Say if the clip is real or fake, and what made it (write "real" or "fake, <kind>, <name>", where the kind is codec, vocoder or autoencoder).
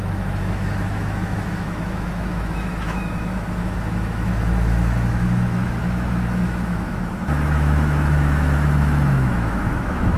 fake, autoencoder, DAC-VAE